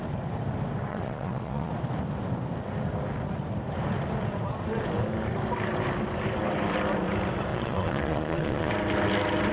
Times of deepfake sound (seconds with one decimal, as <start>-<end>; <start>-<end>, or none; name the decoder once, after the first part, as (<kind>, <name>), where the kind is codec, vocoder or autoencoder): 0.9-1.7 (vocoder, Vocos); 7.5-8.7